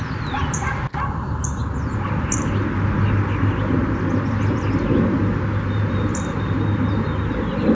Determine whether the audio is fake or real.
real